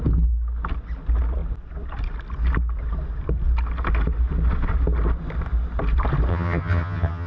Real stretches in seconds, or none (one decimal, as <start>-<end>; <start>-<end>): 0.0-6.3